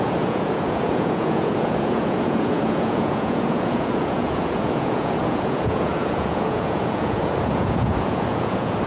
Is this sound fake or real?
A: fake